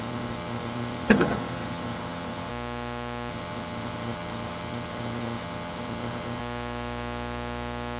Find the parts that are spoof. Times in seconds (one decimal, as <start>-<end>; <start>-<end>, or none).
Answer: 0.0-2.5; 3.3-6.4